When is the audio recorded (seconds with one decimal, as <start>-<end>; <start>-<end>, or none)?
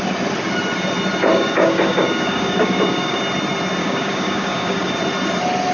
0.0-1.3; 3.2-3.8; 4.9-5.7